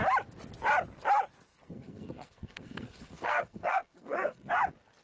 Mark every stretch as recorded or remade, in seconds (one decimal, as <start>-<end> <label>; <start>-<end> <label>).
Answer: 0.0-1.5 recorded; 1.5-4.5 remade; 4.5-5.0 recorded